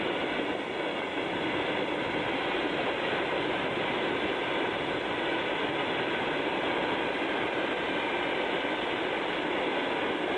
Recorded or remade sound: recorded